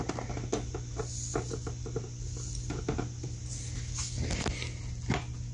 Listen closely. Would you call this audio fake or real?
real